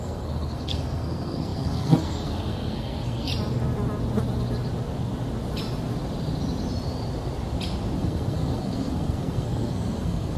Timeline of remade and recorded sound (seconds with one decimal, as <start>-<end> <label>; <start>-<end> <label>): 0.0-3.3 remade; 3.3-8.0 recorded; 8.0-10.4 remade